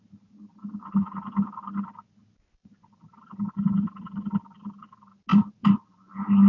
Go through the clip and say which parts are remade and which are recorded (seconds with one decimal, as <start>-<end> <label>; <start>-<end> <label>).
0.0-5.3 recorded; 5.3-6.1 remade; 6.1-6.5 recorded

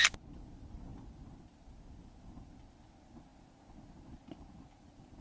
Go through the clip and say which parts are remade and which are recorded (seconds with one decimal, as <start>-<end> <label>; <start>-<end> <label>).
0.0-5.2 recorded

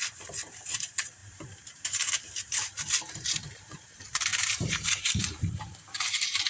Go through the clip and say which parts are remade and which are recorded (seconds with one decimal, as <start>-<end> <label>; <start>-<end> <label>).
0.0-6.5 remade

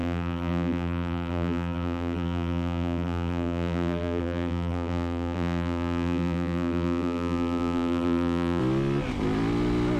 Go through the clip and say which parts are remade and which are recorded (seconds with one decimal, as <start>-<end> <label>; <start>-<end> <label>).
0.0-8.6 remade; 8.6-10.0 recorded

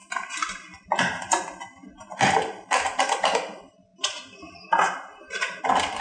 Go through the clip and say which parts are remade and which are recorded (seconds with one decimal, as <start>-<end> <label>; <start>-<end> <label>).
0.0-3.9 remade; 3.9-5.6 recorded; 5.6-6.0 remade

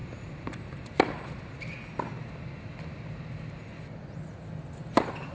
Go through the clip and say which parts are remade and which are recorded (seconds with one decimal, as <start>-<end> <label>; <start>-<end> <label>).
0.0-1.6 remade; 1.6-5.3 recorded

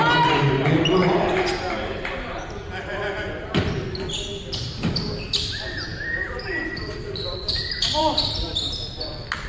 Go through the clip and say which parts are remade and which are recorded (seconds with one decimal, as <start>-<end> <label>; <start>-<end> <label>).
0.0-2.6 recorded; 2.6-3.5 remade; 3.5-5.9 recorded; 5.9-8.2 remade; 8.2-9.5 recorded

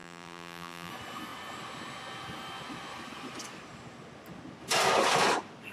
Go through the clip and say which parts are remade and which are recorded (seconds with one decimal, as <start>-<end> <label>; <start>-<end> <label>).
0.0-0.9 remade; 0.9-5.7 recorded